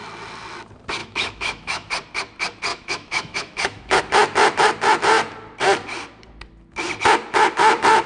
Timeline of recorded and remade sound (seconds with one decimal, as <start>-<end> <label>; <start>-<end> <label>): 0.0-1.0 recorded; 1.0-1.9 remade; 1.9-2.7 recorded; 2.7-4.0 remade; 4.0-8.1 recorded